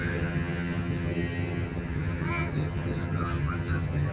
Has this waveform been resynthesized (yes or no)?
yes